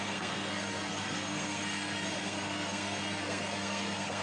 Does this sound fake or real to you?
fake